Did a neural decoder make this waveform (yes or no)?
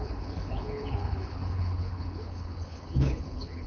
yes